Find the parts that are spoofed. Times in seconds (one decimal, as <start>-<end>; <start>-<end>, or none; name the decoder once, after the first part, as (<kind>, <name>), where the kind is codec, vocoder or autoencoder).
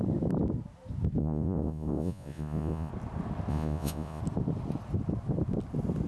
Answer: 1.2-2.9 (vocoder, Vocos); 3.5-4.2